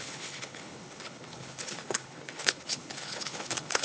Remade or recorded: remade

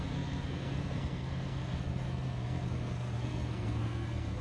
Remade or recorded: remade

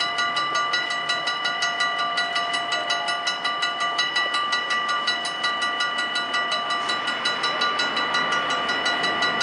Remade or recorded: recorded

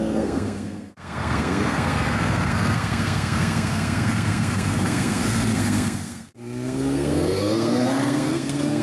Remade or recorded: remade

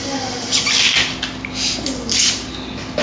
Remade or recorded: recorded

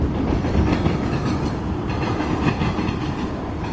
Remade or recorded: recorded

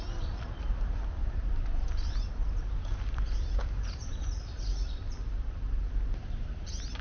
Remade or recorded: remade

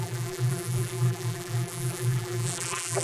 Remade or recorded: remade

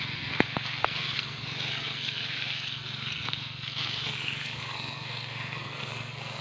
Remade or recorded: remade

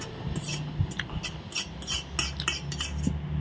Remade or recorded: recorded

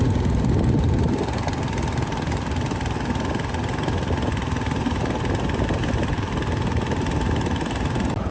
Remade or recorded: recorded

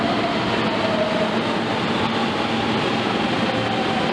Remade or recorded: recorded